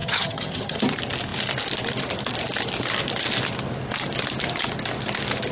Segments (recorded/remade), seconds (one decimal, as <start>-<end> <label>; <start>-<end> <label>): 0.0-0.8 remade; 0.8-5.5 recorded

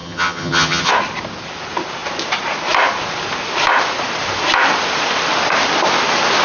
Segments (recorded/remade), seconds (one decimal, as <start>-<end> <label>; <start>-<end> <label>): 0.0-0.9 remade; 0.9-6.4 recorded

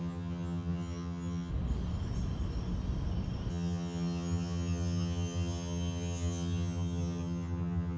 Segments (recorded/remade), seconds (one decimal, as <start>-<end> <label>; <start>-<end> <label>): 0.0-1.5 remade; 1.5-3.5 recorded; 3.5-8.0 remade

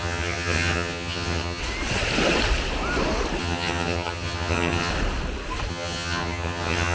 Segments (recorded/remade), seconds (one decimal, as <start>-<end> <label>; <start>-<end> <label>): 0.0-1.6 remade; 1.6-3.4 recorded; 3.4-4.9 remade; 4.9-5.7 recorded; 5.7-6.9 remade

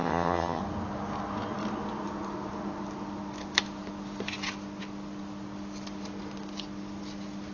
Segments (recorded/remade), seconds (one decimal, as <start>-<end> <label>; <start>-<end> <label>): 0.0-0.6 remade; 0.6-7.5 recorded

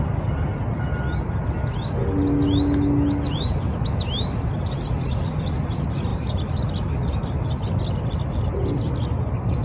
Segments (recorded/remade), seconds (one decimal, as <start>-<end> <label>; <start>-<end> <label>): 0.0-9.6 recorded

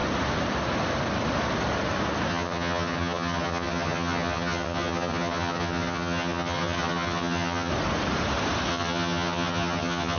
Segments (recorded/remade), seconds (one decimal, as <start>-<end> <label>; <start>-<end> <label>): 0.0-2.3 recorded; 2.3-7.7 remade; 7.7-8.7 recorded; 8.7-10.2 remade